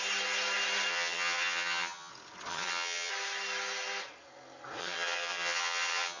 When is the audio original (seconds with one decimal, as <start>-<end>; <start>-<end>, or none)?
0.0-0.9; 2.1-2.5; 3.1-4.8